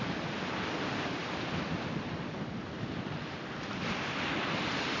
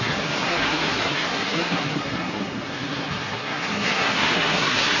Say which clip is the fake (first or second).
second